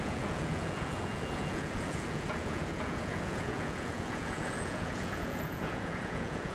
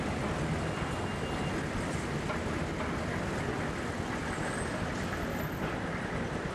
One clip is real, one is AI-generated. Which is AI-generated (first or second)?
first